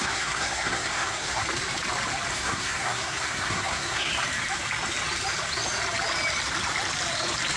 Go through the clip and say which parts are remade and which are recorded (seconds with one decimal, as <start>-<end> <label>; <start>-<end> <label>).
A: 0.0-1.4 remade; 1.4-2.3 recorded; 2.3-4.1 remade; 4.1-7.6 recorded